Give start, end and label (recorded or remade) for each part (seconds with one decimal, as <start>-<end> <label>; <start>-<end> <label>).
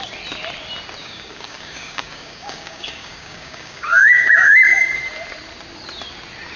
0.0-1.0 recorded; 1.0-5.0 remade; 5.0-6.6 recorded